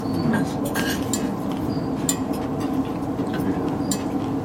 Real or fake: real